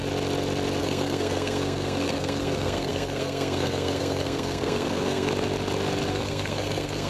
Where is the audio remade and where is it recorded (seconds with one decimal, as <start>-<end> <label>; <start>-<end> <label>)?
0.0-0.8 recorded; 0.8-5.3 remade; 5.3-6.1 recorded; 6.1-7.1 remade